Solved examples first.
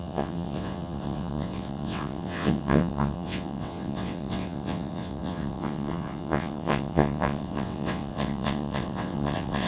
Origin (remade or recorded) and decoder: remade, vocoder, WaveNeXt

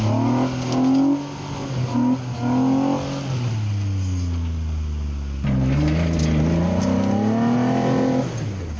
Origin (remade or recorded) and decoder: recorded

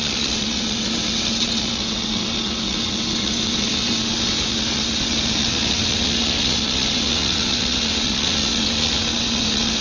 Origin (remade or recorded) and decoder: remade, vocoder, WaveNeXt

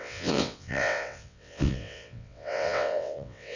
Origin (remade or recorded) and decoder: remade, vocoder, WaveNeXt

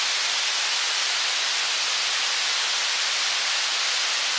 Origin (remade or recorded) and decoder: recorded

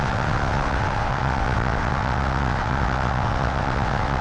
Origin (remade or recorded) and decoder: remade, vocoder, WaveNeXt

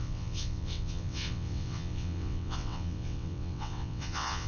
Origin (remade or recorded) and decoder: remade, vocoder, WaveNeXt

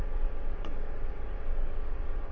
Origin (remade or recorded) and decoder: remade, vocoder, WaveNeXt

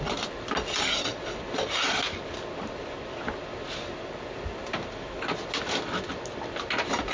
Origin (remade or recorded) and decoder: recorded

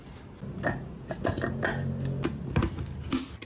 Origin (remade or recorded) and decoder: recorded